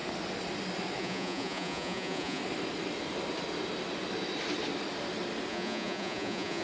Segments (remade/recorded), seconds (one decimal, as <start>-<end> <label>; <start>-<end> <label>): 0.0-1.0 recorded; 1.0-2.4 remade; 2.4-5.5 recorded; 5.5-6.6 remade